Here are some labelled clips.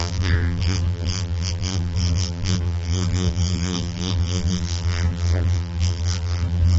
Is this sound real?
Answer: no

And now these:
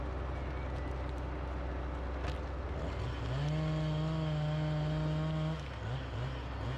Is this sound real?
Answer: yes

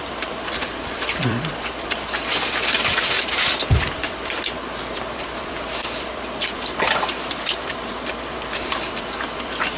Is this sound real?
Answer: no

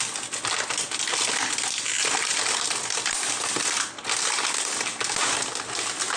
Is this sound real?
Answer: yes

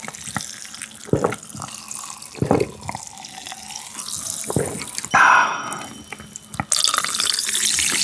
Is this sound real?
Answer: yes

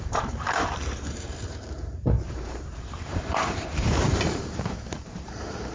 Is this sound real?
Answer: no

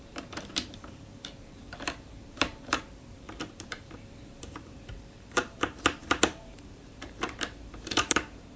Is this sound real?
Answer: no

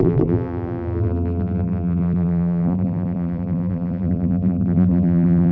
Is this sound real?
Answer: no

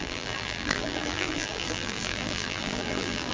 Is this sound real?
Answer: no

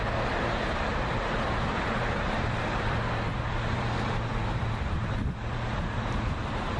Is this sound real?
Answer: no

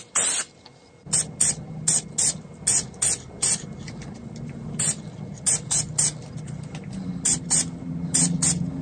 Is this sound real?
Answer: yes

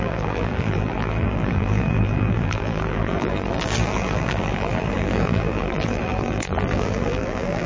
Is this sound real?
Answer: no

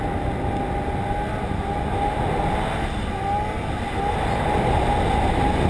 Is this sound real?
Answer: yes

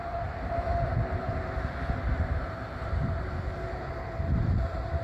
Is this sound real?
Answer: no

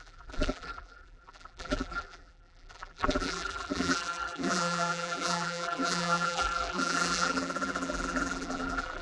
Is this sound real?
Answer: no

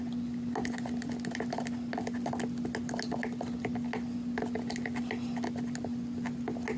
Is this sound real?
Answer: yes